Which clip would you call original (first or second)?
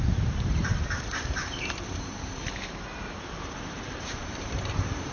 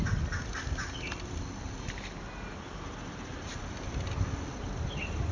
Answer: second